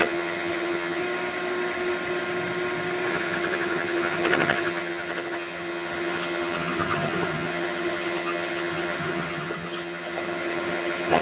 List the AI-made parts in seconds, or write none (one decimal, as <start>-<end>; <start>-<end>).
0.0-1.0; 3.1-11.2

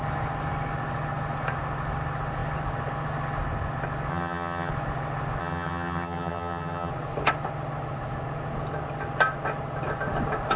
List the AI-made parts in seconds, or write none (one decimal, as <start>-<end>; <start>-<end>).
4.1-4.7; 5.4-6.9

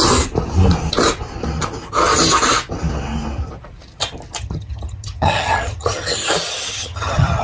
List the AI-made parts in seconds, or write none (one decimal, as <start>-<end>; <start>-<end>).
4.4-6.2; 6.7-7.4